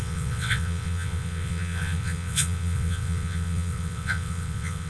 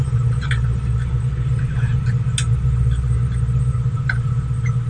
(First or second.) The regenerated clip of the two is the first